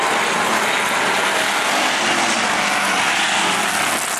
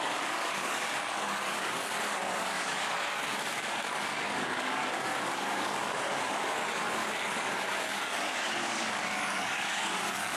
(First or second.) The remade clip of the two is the second